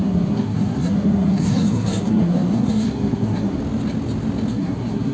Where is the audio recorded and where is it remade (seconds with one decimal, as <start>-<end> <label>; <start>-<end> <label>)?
0.0-3.6 remade; 3.6-4.5 recorded; 4.5-5.1 remade